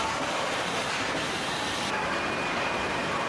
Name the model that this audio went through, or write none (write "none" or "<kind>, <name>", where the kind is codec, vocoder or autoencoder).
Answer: vocoder, BigVGAN v2